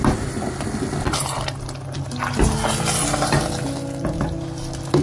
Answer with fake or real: real